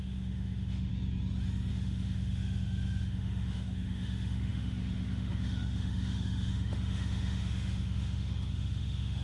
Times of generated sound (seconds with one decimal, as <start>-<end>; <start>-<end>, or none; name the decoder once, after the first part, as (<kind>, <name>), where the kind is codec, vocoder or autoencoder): 0.0-0.9 (autoencoder, DAC-VAE); 1.7-9.2